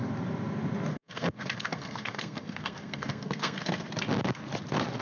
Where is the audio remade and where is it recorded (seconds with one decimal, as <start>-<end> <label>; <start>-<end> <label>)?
0.0-0.9 recorded; 0.9-3.9 remade; 3.9-5.0 recorded